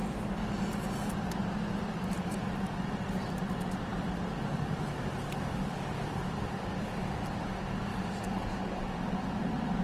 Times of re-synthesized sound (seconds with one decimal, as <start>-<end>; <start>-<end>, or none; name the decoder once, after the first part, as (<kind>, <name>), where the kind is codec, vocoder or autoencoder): 1.8-9.8 (vocoder, BigVGAN v2)